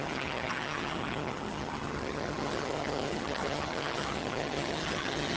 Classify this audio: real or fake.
fake